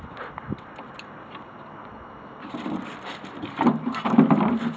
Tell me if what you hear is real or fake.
real